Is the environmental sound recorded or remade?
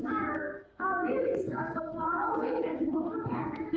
remade